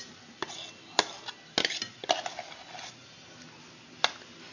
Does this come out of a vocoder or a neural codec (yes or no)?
no